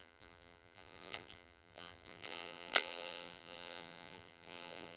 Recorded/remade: remade